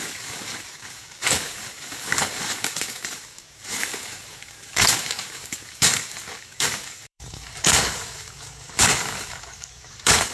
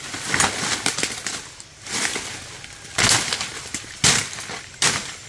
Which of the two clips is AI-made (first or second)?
first